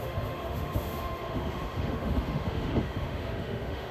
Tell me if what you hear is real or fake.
fake